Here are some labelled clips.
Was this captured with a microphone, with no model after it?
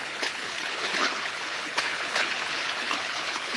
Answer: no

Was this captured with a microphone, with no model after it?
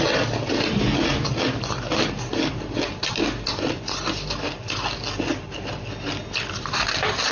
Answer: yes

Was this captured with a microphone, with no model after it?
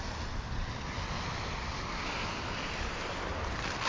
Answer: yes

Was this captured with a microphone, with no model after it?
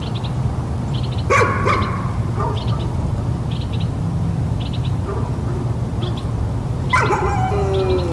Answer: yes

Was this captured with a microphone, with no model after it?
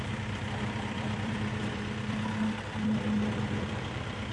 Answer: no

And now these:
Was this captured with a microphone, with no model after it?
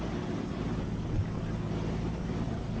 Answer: yes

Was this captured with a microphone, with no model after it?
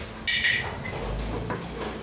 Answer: yes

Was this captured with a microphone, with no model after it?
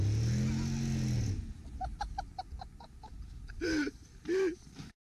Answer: yes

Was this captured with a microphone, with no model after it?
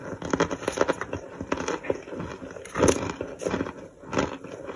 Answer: yes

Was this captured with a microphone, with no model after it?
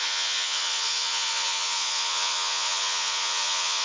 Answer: no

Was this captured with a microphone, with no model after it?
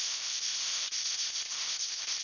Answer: no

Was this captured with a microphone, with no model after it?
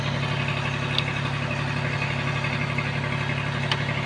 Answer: yes